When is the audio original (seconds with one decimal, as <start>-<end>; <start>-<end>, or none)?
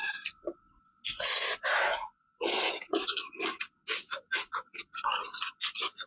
0.0-6.1